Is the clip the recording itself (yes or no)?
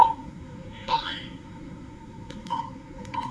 no